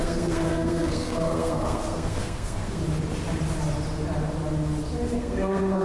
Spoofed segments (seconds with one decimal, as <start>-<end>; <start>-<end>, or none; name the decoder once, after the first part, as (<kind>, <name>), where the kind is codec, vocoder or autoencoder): 0.0-2.8 (codec, SNAC); 5.2-5.8